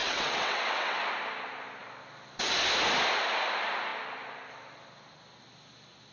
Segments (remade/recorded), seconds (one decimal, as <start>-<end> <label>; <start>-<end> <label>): 0.0-1.0 remade; 1.0-6.1 recorded